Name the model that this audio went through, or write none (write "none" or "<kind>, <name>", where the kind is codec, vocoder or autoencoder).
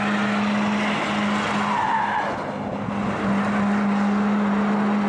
none